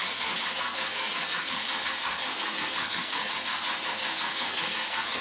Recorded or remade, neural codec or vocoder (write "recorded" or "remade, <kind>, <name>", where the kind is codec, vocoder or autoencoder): remade, codec, SNAC